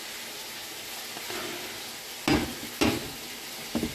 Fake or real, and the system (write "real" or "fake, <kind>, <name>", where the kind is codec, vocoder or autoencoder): real